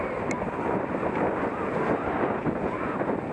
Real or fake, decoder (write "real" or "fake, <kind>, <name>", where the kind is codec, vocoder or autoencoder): real